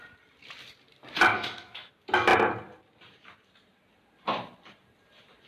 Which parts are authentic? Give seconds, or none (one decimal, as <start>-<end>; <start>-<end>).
0.0-1.3; 1.9-5.5